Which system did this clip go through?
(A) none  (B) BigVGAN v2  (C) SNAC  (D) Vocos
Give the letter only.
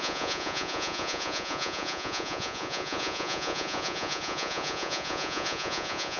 D